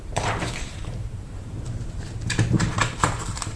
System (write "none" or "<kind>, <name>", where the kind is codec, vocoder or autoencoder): vocoder, BigVGAN v2